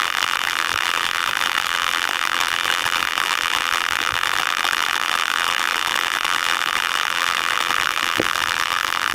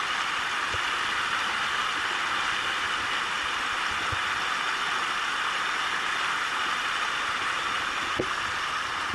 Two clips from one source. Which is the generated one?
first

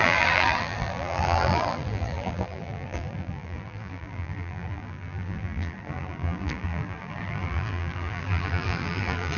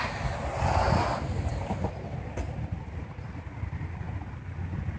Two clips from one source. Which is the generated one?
first